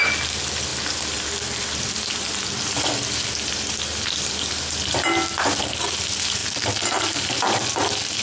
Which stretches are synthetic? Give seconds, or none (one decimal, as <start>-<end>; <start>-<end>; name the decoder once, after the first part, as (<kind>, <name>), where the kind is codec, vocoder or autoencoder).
none